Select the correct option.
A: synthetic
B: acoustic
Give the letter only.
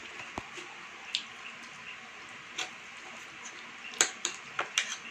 B